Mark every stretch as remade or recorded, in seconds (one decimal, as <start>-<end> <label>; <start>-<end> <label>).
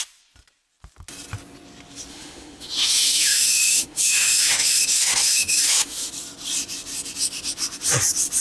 0.0-2.1 recorded; 2.1-6.1 remade; 6.1-8.4 recorded